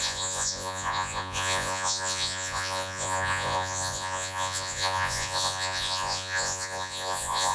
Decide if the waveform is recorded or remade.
remade